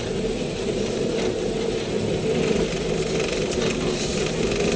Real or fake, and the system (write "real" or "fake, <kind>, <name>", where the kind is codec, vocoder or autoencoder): real